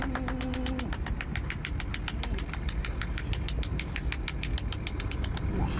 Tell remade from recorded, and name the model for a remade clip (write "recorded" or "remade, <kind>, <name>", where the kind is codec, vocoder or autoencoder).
recorded